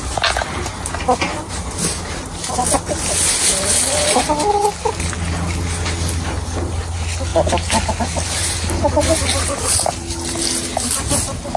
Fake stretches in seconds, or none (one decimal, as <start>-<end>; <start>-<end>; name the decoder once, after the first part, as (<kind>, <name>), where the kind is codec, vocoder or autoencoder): none

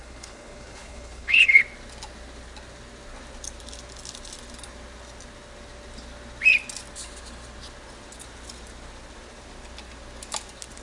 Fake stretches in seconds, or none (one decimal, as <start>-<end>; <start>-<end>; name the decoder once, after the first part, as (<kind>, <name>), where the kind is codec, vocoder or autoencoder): 0.0-1.6 (codec, HILCodec)